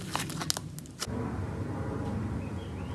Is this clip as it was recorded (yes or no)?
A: yes